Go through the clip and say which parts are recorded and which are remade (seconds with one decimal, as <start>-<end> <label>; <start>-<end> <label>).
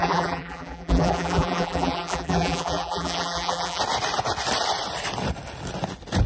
0.0-3.8 remade; 3.8-6.3 recorded